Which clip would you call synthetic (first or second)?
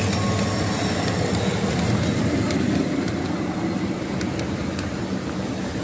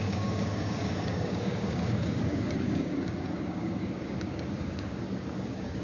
second